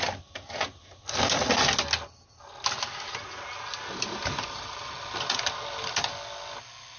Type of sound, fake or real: real